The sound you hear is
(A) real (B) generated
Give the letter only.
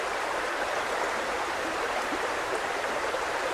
B